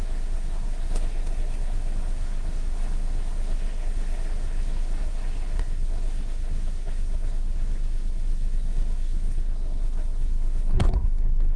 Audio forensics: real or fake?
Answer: fake